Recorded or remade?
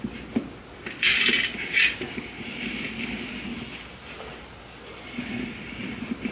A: recorded